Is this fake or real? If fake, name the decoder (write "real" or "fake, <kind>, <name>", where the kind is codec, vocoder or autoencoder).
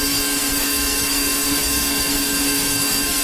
fake, codec, SNAC